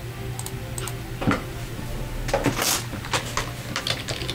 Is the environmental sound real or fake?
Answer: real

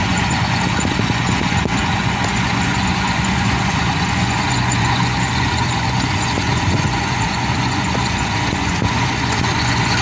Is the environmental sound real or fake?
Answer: fake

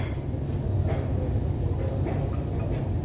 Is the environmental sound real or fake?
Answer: real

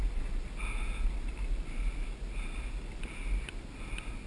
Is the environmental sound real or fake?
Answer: real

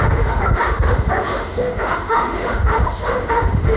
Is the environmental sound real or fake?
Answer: fake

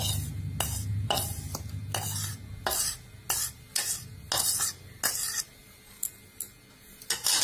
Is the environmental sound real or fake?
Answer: real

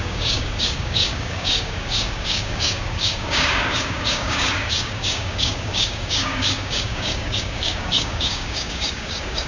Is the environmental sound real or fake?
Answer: fake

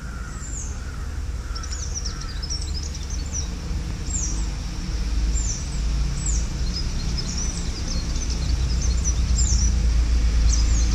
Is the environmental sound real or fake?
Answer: real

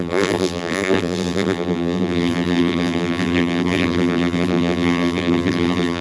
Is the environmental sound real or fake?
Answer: fake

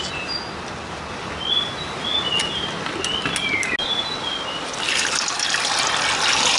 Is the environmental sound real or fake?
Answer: real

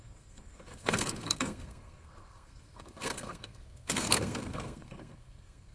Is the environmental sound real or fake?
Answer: fake